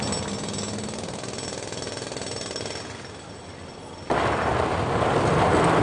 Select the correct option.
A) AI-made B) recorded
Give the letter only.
B